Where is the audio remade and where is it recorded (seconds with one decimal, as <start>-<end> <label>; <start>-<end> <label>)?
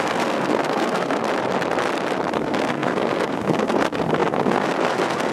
0.0-1.2 remade; 1.2-2.3 recorded; 2.3-5.3 remade